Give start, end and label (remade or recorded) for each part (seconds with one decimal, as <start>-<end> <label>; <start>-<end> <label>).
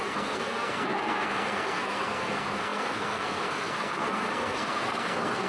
0.0-5.5 remade